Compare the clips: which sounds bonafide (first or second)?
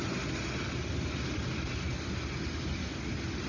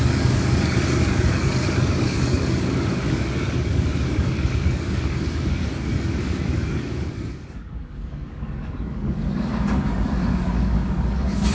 first